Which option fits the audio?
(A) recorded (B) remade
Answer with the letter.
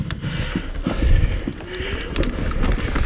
A